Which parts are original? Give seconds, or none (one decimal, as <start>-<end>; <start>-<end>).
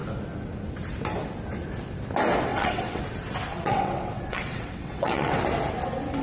0.0-2.5; 3.0-3.5; 5.4-6.2